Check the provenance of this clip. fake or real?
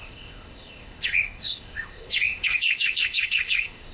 fake